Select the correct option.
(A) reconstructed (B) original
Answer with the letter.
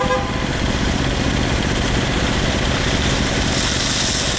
B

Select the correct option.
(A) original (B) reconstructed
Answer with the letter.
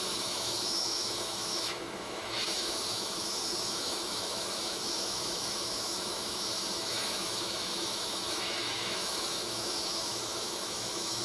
B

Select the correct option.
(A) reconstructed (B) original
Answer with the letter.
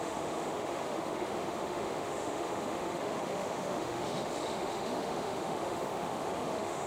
A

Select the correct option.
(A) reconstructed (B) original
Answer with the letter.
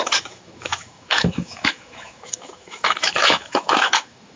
A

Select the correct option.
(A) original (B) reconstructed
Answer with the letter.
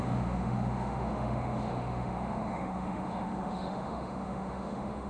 B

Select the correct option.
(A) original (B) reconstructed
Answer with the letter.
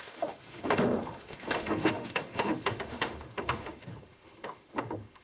B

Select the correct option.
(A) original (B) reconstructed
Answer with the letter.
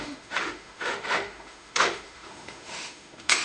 B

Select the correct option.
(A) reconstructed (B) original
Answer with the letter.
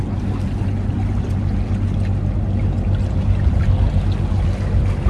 B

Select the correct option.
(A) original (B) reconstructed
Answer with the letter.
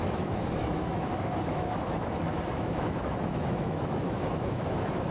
B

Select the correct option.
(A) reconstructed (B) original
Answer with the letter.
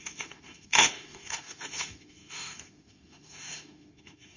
A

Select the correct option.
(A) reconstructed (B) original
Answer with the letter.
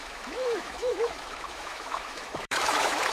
A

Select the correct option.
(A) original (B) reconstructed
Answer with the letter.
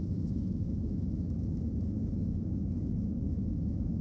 B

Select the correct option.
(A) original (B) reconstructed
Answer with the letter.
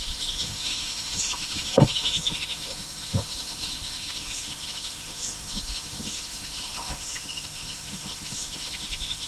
B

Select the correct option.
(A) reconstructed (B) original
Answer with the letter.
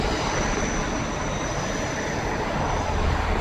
B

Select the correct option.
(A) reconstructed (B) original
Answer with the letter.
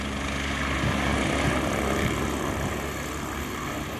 B